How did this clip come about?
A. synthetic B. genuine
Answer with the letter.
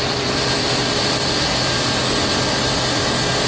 B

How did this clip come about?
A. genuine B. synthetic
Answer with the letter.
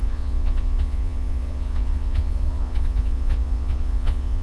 B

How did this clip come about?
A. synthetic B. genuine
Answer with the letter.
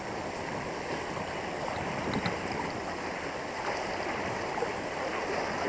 B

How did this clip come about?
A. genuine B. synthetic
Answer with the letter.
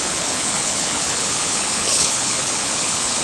B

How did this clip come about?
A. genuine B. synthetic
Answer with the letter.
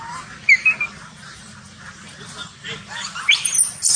A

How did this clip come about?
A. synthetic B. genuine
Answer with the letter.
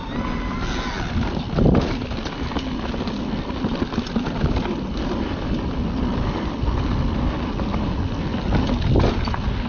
B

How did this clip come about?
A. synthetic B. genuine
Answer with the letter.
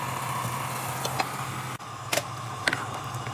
B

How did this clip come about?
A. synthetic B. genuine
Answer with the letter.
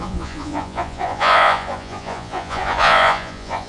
A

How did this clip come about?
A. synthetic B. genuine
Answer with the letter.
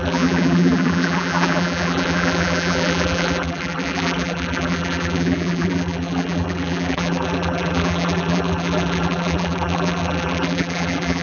A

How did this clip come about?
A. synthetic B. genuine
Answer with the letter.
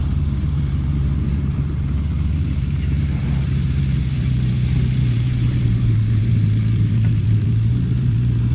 A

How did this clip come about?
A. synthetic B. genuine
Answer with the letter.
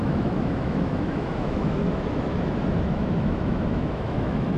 A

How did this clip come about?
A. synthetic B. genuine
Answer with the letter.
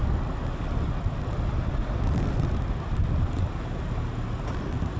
B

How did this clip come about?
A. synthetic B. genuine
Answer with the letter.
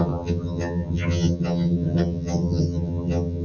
A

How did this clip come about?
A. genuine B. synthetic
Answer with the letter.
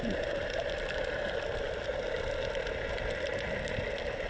A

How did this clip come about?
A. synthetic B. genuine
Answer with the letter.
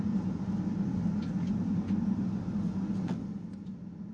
B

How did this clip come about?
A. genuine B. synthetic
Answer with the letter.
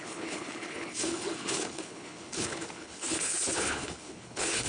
B